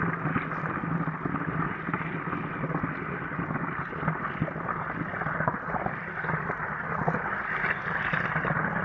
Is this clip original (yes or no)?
yes